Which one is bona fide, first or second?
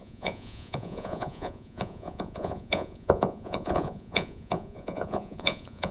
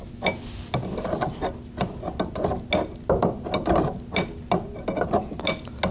second